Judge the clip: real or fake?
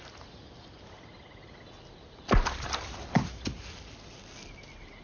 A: real